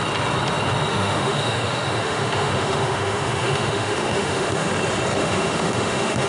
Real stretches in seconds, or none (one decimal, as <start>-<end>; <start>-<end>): 0.0-0.9; 4.7-5.2